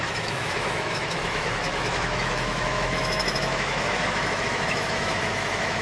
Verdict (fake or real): fake